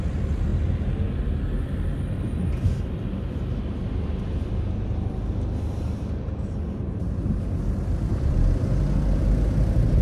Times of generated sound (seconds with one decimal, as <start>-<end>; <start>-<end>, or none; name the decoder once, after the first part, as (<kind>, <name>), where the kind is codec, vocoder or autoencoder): none